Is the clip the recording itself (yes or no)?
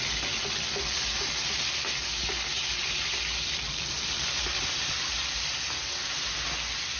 yes